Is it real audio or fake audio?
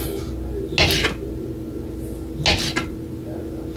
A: real